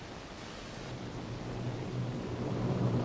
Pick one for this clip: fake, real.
real